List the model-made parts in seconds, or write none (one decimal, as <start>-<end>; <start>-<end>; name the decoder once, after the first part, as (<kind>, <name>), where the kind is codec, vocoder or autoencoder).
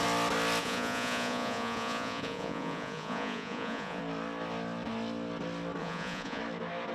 0.6-4.0 (vocoder, Vocos); 5.8-6.4